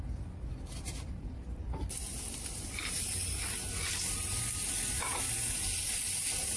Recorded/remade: recorded